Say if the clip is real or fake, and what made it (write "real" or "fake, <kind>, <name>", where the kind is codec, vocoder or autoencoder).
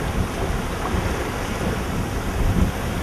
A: real